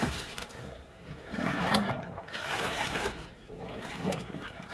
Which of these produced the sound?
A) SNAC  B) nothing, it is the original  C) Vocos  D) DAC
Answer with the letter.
A